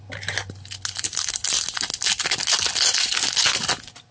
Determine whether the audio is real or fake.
real